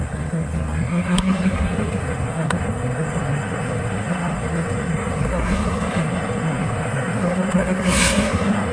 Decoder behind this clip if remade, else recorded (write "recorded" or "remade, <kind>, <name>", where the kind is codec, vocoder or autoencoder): remade, codec, SNAC